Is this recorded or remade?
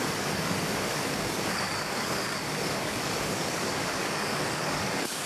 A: remade